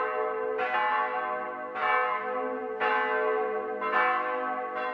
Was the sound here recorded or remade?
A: recorded